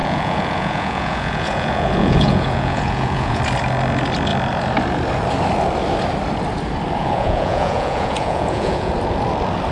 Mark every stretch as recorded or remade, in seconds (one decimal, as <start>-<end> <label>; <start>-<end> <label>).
0.0-3.4 remade; 3.4-7.0 recorded; 7.0-8.9 remade; 8.9-9.7 recorded